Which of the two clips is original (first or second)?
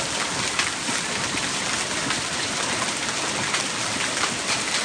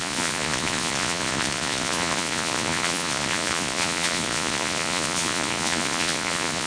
first